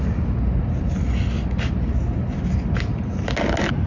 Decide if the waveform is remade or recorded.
recorded